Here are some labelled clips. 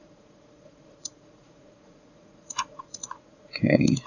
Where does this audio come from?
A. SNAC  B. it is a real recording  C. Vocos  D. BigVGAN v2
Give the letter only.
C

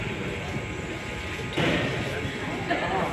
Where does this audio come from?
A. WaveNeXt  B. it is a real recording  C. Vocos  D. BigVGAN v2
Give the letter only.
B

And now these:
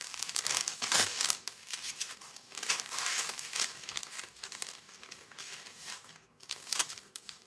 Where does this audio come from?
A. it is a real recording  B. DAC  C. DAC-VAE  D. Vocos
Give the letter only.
B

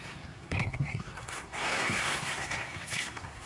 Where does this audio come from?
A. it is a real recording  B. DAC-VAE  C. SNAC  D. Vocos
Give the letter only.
C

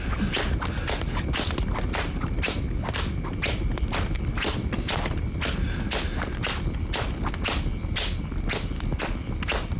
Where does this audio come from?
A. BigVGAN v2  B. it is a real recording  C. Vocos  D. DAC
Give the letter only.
B